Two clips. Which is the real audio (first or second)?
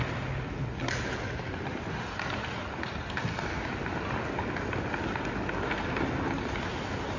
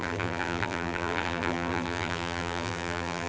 first